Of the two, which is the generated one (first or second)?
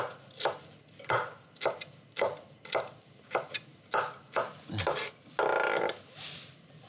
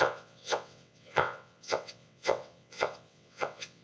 second